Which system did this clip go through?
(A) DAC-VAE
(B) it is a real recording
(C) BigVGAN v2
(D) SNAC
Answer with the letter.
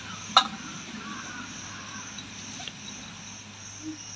B